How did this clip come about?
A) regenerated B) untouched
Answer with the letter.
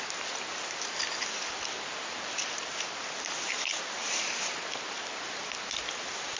B